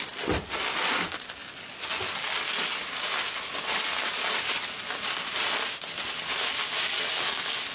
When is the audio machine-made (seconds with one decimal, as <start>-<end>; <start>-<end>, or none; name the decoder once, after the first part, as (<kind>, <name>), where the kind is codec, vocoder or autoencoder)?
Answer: none